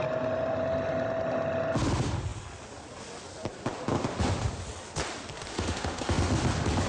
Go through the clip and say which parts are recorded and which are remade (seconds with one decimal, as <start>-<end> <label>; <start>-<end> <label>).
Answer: 0.0-5.5 recorded; 5.5-6.3 remade; 6.3-6.9 recorded